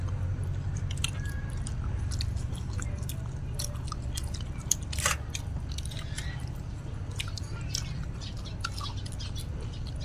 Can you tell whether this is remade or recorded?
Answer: recorded